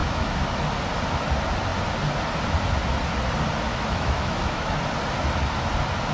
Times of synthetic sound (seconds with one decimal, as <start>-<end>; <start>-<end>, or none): 0.0-0.6; 3.7-4.8